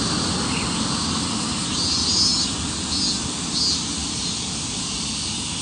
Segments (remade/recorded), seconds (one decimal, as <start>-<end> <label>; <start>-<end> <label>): 0.0-5.6 recorded